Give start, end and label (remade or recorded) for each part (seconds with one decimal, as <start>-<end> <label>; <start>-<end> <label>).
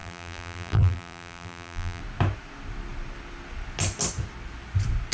0.0-2.0 remade; 2.0-5.1 recorded